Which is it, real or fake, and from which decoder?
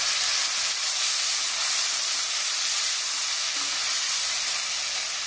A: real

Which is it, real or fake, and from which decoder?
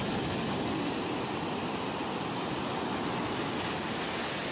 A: real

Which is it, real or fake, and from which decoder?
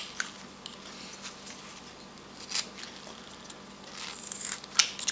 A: real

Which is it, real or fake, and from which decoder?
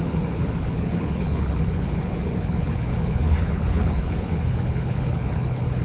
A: fake, codec, HILCodec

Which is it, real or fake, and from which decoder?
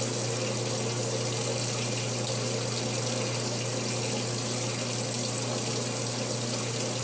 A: real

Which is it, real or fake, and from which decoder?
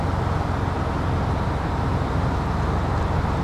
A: real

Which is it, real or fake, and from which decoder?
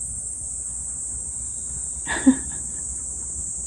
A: real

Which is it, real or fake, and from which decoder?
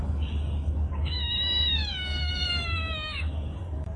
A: fake, codec, DAC